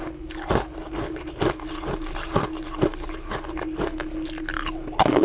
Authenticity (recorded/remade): recorded